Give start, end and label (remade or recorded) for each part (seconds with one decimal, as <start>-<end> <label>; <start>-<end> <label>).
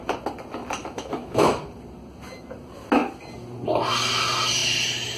0.0-0.8 recorded; 0.8-1.6 remade; 1.6-5.2 recorded